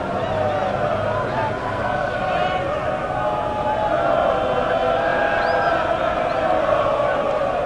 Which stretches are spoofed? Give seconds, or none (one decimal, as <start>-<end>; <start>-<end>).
1.6-2.2